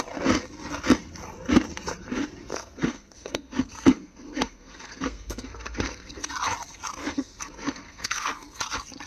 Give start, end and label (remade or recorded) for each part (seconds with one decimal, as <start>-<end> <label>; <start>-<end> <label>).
0.0-2.5 recorded; 2.5-6.3 remade; 6.3-7.0 recorded; 7.0-8.6 remade; 8.6-9.1 recorded